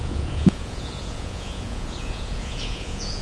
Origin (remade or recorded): remade